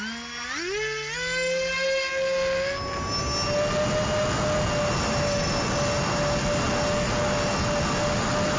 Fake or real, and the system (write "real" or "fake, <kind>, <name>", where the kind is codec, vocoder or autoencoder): real